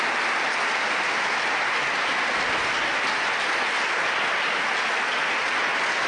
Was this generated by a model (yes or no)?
no